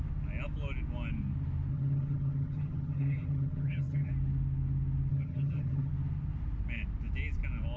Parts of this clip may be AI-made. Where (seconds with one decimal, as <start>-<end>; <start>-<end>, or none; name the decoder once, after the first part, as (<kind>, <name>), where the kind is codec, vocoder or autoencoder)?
1.7-4.1 (vocoder, HiFi-GAN); 5.1-5.9